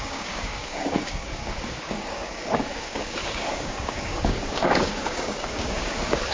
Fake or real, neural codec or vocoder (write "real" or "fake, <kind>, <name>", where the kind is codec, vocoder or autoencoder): fake, codec, DAC